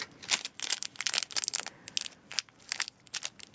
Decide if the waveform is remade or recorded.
recorded